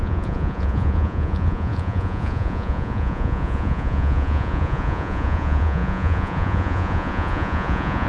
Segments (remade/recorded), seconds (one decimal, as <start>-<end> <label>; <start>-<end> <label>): 0.0-8.1 remade